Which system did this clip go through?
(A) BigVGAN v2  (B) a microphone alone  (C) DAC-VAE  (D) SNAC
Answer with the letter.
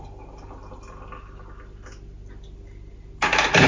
B